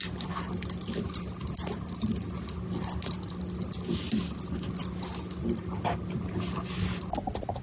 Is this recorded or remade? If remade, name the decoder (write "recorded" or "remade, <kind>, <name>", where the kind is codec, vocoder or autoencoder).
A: recorded